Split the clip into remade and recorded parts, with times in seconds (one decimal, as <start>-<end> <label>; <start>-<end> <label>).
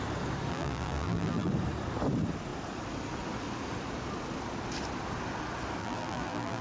0.0-0.5 recorded; 0.5-1.5 remade; 1.5-5.8 recorded; 5.8-6.6 remade